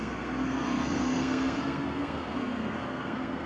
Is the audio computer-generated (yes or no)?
yes